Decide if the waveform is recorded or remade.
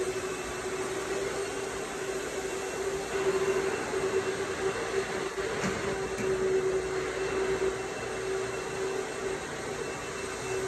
recorded